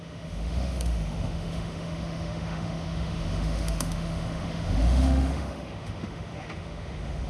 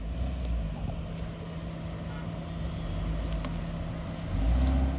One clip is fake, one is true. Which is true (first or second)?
second